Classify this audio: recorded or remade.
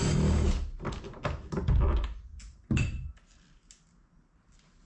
recorded